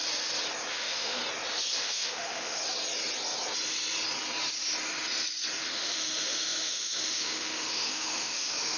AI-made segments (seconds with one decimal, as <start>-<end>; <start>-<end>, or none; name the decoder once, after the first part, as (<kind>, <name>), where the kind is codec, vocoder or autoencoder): 0.7-1.2 (autoencoder, DAC-VAE); 1.8-2.6; 5.6-8.8